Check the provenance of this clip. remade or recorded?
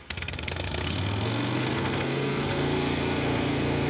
remade